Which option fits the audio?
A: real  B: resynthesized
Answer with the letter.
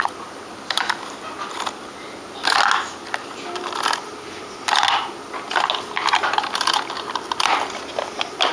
A